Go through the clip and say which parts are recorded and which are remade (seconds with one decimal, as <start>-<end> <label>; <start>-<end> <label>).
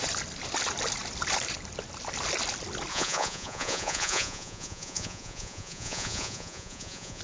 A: 0.0-2.9 recorded; 2.9-7.2 remade